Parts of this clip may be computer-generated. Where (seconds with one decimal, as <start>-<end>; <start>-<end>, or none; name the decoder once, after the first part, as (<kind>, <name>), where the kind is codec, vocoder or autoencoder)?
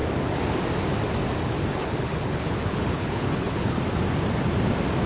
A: 1.7-3.8 (codec, HILCodec)